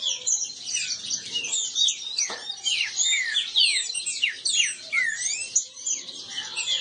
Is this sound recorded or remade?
recorded